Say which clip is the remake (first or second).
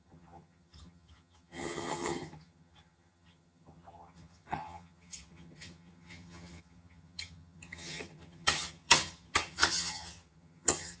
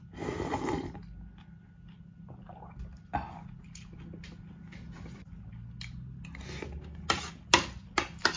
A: first